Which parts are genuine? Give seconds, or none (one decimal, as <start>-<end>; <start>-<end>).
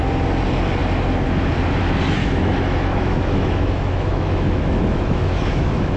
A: 0.0-2.2